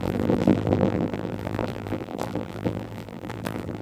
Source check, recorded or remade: remade